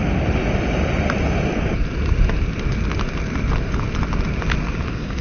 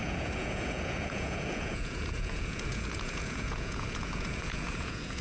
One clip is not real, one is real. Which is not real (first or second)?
second